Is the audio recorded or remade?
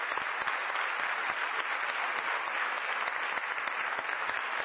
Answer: recorded